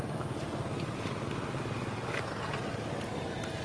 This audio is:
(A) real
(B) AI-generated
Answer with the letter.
A